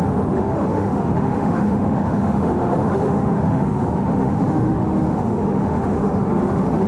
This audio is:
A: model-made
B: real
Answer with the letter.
A